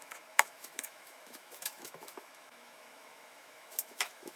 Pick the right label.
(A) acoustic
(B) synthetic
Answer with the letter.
B